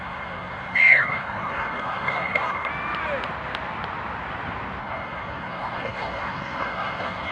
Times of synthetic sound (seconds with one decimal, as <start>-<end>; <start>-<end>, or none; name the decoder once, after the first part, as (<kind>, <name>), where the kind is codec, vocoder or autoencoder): 0.0-2.7 (codec, SNAC); 4.8-7.3